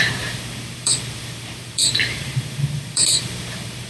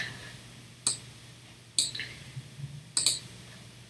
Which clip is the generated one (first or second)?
first